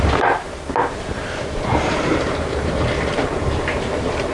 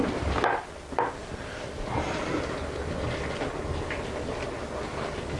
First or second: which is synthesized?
first